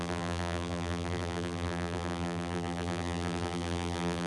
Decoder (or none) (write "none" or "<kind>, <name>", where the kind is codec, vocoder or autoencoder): vocoder, BigVGAN v2